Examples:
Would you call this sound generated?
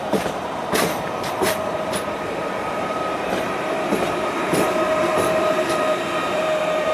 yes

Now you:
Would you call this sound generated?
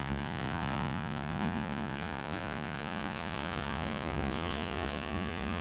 yes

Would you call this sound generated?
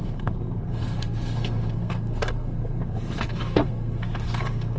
yes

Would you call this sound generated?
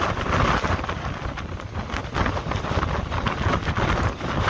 no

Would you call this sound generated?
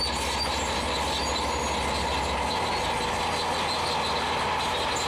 no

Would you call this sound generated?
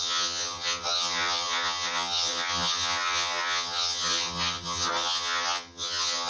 yes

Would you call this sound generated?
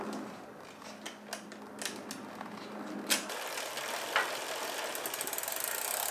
no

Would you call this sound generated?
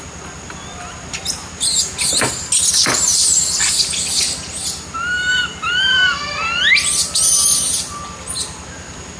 no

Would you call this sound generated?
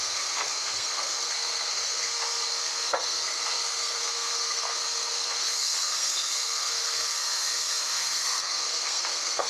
yes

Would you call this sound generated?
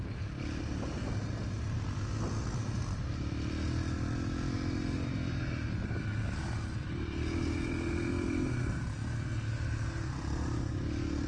no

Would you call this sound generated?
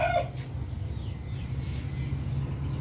no